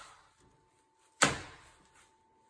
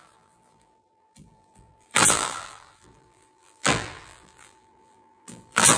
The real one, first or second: first